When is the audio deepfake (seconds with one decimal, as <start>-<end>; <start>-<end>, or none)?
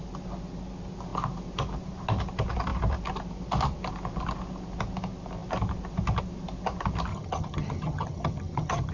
7.1-8.9